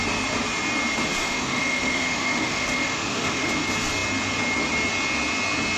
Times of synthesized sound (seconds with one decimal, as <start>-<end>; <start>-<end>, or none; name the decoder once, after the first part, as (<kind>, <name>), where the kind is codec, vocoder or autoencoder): 1.2-3.5 (autoencoder, DAC-VAE)